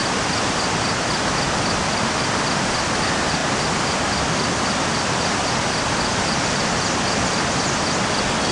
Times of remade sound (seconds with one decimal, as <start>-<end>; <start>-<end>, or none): 0.0-2.4; 6.1-6.7